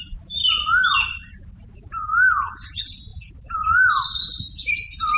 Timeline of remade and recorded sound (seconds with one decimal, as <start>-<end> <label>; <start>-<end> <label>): 0.0-5.2 recorded